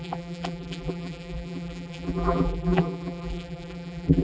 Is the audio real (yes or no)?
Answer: no